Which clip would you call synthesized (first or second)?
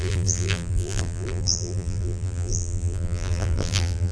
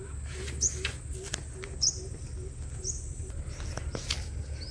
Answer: first